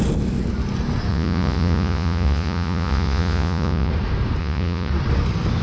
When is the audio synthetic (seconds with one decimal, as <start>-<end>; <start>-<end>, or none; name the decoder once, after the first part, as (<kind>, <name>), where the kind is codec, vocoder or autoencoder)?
1.1-3.9 (vocoder, Vocos); 4.4-4.9